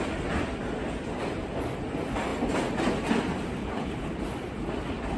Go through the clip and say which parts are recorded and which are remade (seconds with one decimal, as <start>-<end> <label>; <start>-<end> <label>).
0.0-3.6 recorded; 3.6-4.1 remade; 4.1-5.2 recorded

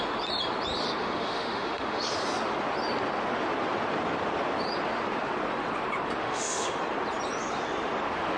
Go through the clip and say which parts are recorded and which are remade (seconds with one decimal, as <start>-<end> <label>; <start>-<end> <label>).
0.0-1.0 recorded; 1.0-2.0 remade; 2.0-6.2 recorded; 6.2-6.8 remade; 6.8-8.4 recorded